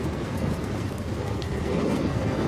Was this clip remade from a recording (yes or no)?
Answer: yes